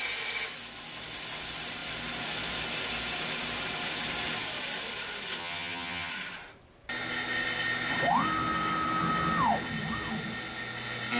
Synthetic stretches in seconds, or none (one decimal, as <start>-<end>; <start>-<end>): 5.4-6.1